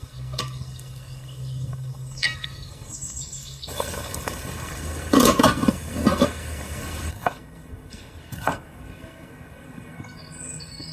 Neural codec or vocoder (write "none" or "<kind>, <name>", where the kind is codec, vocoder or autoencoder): codec, SNAC